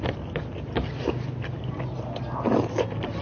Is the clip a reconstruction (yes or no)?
no